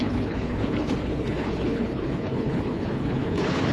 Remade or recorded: remade